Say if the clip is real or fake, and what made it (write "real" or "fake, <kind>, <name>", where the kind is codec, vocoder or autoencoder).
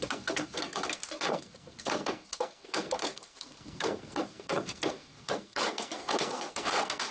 fake, codec, SNAC